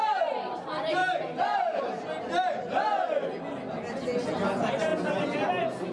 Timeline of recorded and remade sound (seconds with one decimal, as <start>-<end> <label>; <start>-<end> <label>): 0.0-5.9 recorded